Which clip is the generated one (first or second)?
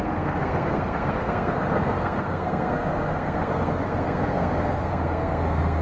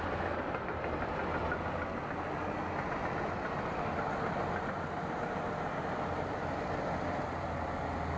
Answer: first